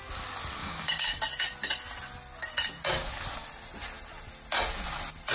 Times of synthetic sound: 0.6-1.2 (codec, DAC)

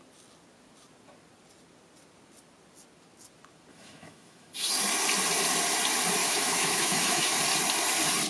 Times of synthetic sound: 3.7-4.7 (autoencoder, DAC-VAE); 6.2-7.4

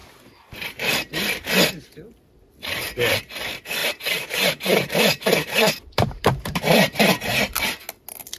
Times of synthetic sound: 3.8-7.4 (vocoder, BigVGAN v2)